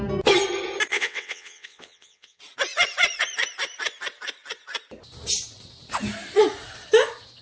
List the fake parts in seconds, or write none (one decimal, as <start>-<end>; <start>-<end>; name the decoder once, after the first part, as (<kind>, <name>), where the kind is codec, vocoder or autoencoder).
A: 0.9-2.4 (vocoder, WaveNeXt)